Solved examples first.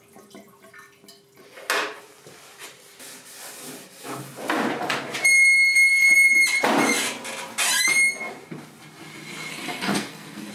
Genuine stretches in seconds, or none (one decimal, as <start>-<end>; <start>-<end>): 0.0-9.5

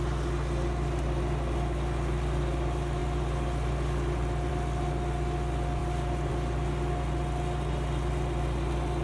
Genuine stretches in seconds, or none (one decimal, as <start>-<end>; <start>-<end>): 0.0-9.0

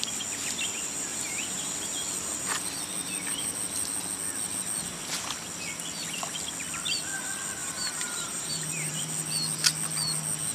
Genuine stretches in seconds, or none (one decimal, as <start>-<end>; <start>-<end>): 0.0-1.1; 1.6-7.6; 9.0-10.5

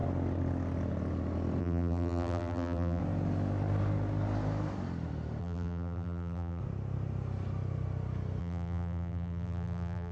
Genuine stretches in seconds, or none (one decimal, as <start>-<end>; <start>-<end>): 0.0-1.6; 3.0-5.4; 6.6-8.4